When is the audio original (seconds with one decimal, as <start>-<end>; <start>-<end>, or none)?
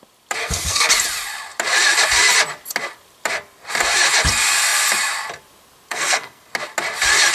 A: 0.0-0.4; 0.9-5.9; 6.5-7.3